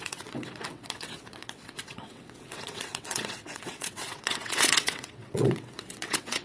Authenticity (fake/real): fake